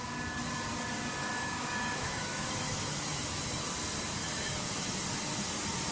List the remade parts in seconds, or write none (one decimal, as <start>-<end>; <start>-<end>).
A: 1.2-3.5; 4.2-5.0